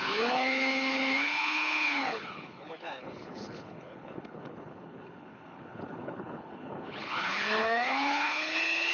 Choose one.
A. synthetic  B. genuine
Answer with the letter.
A